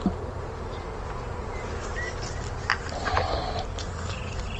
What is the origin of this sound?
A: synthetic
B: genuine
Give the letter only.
B